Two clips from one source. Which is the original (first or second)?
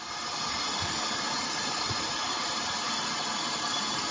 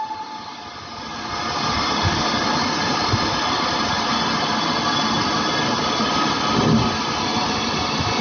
second